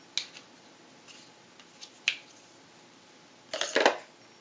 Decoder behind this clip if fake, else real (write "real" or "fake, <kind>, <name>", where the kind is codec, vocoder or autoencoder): real